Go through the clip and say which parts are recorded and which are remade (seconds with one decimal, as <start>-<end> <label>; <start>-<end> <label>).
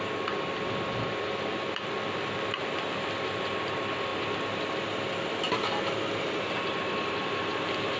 0.0-8.0 recorded